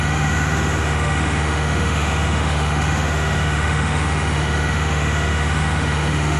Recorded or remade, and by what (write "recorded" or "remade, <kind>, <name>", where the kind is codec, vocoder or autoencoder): remade, autoencoder, DAC-VAE